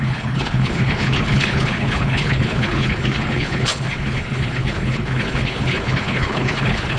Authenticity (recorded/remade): remade